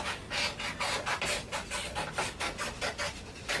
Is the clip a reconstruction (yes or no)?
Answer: no